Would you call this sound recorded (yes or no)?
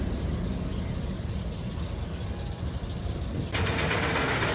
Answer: yes